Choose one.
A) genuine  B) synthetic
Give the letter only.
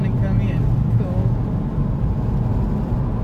A